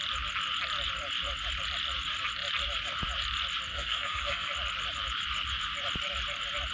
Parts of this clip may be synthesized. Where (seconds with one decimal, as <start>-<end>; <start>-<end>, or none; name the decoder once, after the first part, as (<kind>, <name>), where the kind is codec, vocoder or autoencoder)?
3.7-4.5 (codec, SNAC)

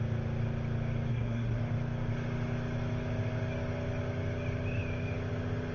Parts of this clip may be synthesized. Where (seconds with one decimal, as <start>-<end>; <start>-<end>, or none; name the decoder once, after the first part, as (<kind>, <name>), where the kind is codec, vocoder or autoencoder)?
1.1-1.6 (codec, SNAC)